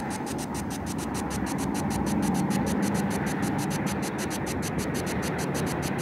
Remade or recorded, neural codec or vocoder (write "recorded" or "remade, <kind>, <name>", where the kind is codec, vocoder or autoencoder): recorded